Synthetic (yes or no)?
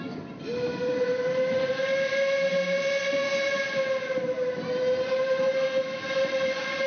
no